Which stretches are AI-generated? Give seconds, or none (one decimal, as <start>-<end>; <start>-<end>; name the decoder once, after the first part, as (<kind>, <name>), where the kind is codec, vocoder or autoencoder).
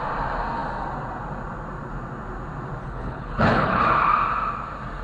2.8-3.8 (codec, HILCodec)